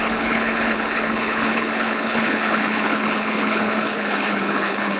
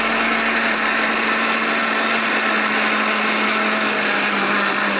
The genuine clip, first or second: second